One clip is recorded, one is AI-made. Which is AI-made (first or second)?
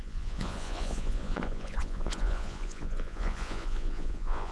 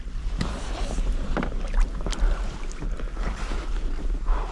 first